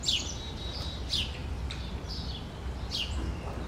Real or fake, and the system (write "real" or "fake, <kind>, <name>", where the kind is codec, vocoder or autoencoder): real